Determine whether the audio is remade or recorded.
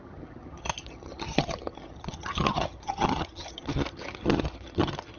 remade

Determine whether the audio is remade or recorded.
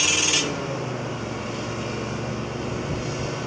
recorded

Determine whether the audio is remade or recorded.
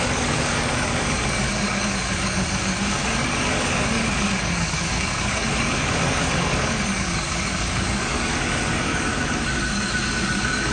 remade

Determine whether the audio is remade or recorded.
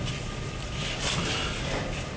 recorded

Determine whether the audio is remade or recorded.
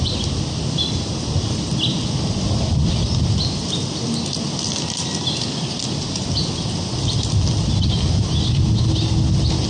recorded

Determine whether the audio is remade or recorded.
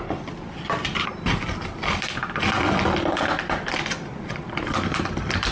recorded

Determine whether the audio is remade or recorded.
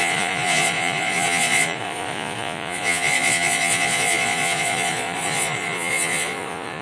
remade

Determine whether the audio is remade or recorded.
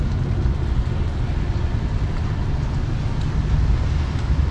recorded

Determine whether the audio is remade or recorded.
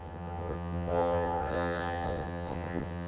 remade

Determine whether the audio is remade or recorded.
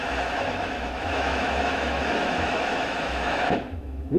remade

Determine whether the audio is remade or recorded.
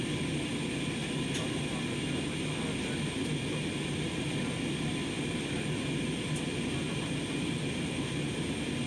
recorded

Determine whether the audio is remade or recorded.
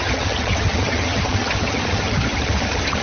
remade